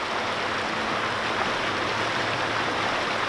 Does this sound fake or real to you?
real